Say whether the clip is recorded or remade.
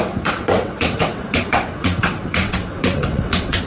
remade